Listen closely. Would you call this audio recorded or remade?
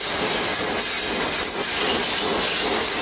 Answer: recorded